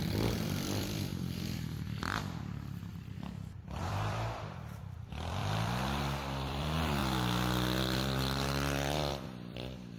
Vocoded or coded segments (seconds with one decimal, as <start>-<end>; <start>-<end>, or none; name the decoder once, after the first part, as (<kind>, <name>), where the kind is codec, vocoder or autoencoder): 0.0-1.1 (vocoder, BigVGAN v2); 2.4-7.0; 9.1-10.0